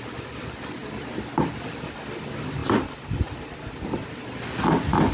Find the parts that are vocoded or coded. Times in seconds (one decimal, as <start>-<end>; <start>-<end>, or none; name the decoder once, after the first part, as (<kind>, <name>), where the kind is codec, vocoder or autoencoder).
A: none